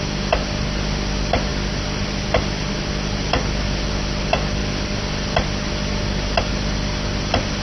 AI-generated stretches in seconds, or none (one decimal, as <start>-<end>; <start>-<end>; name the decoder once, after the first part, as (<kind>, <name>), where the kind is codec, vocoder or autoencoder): none